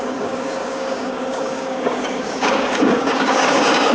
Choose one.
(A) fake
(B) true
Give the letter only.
A